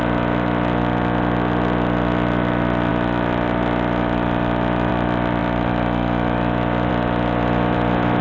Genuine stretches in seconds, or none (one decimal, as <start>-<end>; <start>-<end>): 0.0-8.2